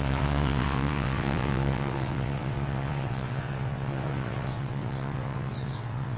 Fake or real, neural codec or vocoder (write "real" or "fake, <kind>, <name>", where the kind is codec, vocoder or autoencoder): fake, vocoder, WaveNeXt